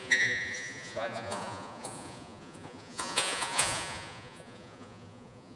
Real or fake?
fake